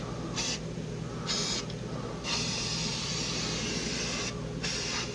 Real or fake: real